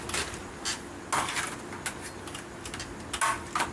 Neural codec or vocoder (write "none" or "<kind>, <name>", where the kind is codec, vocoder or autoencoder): none